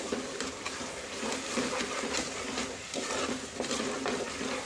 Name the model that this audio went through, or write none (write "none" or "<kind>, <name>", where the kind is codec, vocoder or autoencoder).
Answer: none